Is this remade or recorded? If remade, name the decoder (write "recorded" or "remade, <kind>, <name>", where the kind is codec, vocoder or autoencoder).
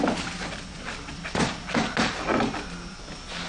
recorded